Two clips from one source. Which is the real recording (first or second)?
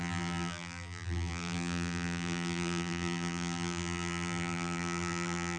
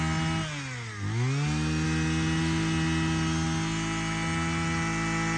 second